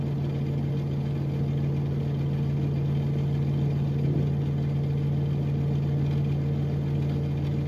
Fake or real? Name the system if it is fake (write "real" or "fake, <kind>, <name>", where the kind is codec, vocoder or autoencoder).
real